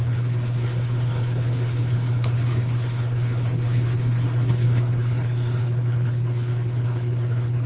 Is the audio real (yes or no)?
no